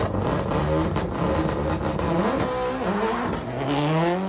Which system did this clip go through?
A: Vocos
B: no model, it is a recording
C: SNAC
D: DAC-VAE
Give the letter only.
B